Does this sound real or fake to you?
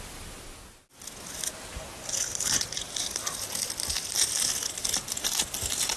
real